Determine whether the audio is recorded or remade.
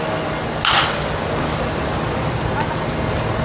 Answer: recorded